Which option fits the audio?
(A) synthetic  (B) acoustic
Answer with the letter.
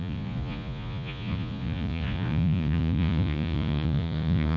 A